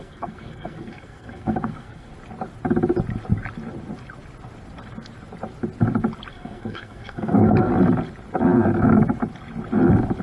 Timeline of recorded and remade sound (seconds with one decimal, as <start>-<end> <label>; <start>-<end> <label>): 0.0-2.1 remade; 2.1-6.3 recorded; 6.3-7.7 remade; 7.7-10.2 recorded